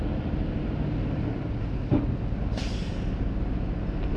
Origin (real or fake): real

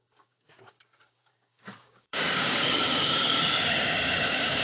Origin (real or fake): fake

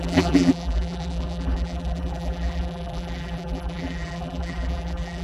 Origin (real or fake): fake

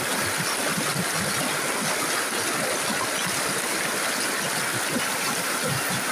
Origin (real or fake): real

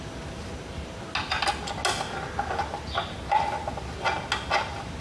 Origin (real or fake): real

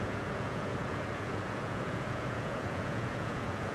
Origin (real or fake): fake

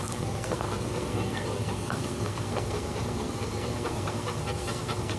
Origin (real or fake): fake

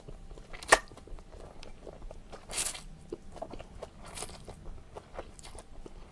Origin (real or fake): real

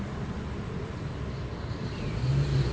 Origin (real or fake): real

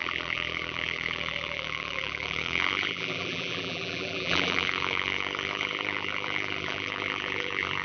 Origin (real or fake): fake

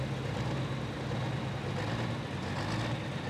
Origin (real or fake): real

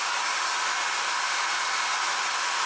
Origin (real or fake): real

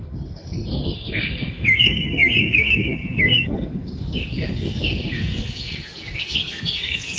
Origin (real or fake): fake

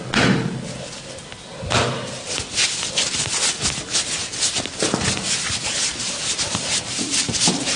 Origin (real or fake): real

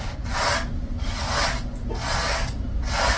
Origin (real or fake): real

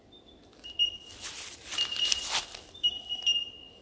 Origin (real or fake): real